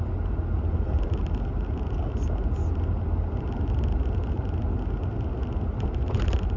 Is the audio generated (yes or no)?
no